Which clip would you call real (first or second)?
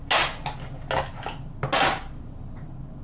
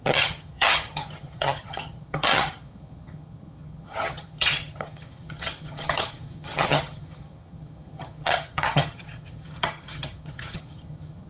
first